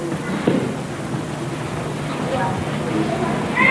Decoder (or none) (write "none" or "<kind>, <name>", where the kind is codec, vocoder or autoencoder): none